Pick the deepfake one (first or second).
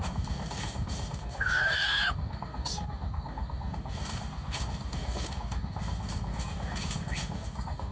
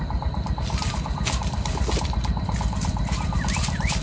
first